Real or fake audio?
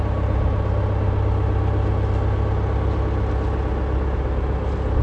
real